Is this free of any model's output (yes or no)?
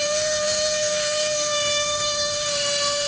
no